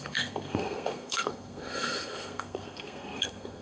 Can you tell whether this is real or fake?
fake